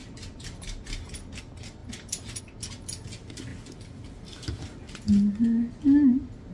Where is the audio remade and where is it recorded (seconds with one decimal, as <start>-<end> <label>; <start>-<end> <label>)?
0.0-6.5 recorded